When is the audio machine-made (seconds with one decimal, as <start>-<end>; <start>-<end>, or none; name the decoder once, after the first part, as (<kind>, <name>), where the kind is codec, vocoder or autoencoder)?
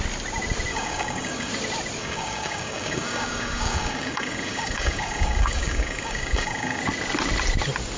0.7-1.5 (codec, DAC); 2.0-6.8